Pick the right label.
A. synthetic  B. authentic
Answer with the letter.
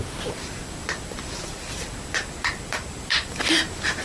A